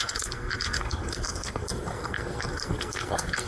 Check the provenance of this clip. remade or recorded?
remade